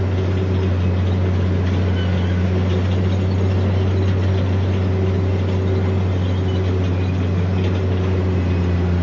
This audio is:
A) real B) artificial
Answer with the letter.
A